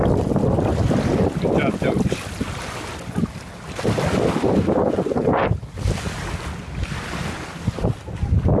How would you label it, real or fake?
real